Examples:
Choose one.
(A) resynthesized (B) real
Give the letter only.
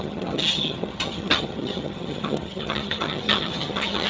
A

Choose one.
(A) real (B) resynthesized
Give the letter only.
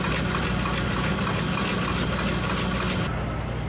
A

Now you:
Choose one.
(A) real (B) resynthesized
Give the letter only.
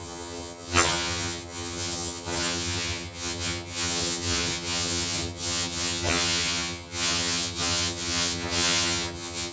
B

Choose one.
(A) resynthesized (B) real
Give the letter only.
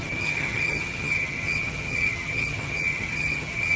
A